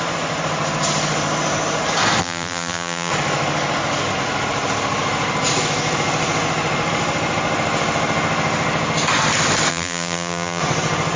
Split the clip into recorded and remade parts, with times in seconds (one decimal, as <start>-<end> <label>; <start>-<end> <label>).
0.0-2.2 recorded; 2.2-3.1 remade; 3.1-9.7 recorded; 9.7-10.6 remade; 10.6-11.2 recorded